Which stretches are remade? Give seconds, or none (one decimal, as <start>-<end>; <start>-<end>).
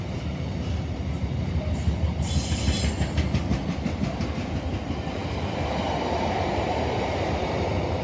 none